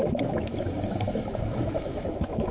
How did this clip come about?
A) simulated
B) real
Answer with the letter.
A